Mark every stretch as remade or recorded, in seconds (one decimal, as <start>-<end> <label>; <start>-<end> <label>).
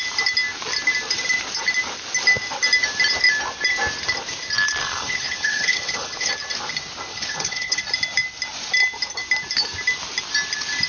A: 0.0-4.8 recorded; 4.8-6.3 remade; 6.3-7.1 recorded; 7.1-7.8 remade; 7.8-10.9 recorded